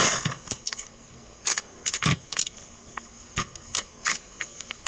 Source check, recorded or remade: remade